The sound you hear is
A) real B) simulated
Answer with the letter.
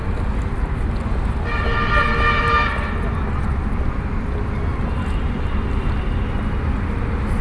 A